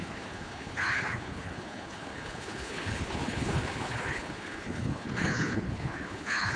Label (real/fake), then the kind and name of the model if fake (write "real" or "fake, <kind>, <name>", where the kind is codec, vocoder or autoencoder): fake, codec, HILCodec